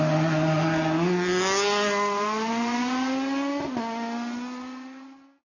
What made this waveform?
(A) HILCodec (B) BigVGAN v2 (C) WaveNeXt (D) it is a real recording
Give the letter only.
D